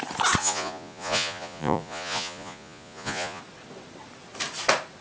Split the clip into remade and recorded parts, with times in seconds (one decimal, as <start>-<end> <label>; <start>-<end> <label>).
0.0-0.4 recorded; 0.4-3.4 remade; 3.4-5.0 recorded